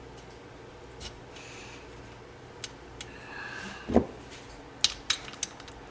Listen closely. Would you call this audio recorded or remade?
recorded